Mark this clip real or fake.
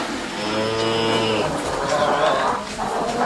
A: real